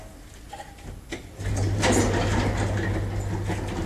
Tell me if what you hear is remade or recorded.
recorded